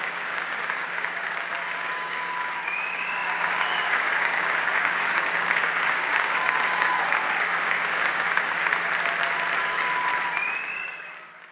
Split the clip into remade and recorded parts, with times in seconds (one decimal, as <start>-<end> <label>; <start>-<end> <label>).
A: 0.0-8.6 remade; 8.6-9.6 recorded; 9.6-10.1 remade; 10.1-10.7 recorded; 10.7-11.5 remade